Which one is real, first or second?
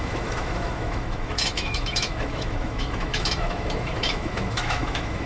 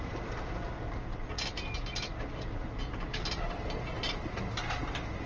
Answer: second